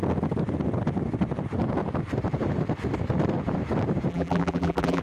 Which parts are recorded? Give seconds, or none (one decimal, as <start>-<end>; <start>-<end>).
0.0-4.1